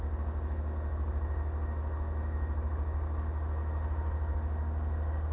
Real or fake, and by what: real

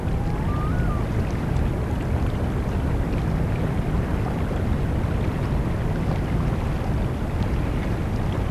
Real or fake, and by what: real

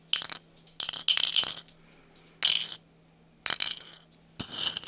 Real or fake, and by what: real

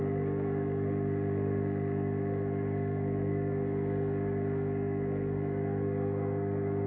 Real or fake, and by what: fake, codec, SNAC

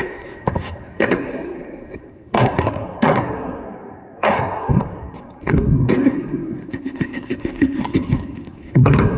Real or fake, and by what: fake, codec, SNAC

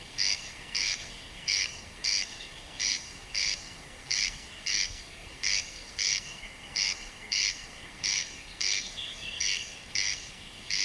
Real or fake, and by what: fake, codec, SNAC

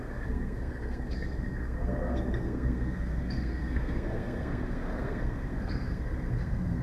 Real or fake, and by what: fake, codec, SNAC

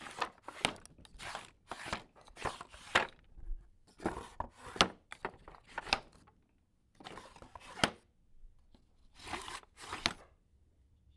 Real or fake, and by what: real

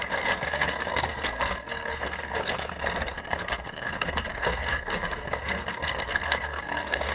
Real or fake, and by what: fake, codec, SNAC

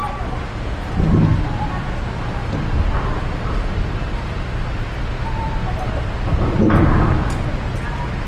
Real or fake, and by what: real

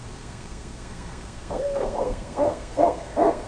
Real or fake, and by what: fake, codec, SNAC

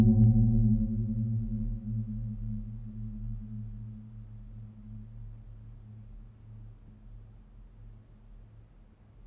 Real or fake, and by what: real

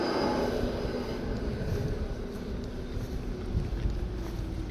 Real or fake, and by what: real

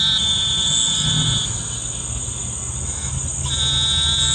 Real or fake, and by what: real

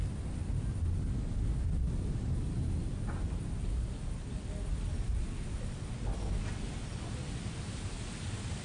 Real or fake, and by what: real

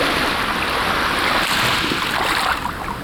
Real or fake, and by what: real